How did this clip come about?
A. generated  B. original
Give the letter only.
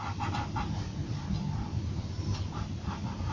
B